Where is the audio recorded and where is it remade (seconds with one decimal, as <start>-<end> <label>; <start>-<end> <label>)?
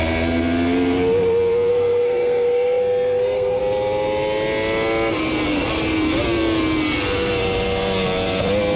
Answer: 0.0-1.7 recorded; 1.7-3.6 remade; 3.6-8.8 recorded